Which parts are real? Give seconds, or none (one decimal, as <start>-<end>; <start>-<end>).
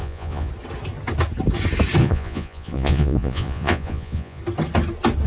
0.5-2.0; 4.4-5.3